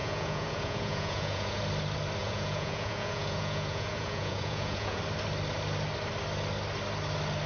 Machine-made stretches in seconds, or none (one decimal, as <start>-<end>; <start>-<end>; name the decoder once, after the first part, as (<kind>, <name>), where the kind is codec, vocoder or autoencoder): 0.0-1.6 (vocoder, Vocos); 2.2-5.0